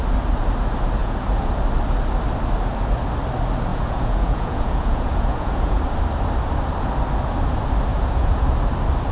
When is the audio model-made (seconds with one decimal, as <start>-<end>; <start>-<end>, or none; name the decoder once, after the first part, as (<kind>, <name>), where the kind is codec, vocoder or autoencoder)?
1.0-1.5 (vocoder, Vocos); 3.7-5.8; 7.9-8.5